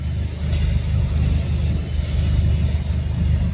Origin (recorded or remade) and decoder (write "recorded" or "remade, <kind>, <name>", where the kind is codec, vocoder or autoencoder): recorded